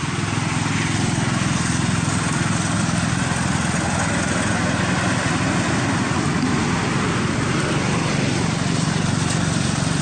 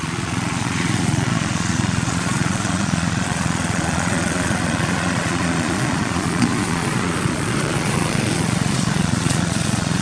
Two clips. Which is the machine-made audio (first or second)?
second